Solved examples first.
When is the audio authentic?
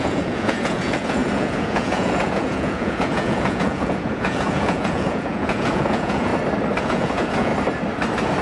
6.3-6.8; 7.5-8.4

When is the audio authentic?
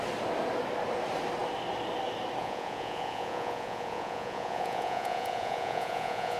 0.0-2.4